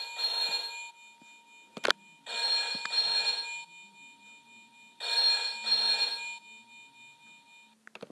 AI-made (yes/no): no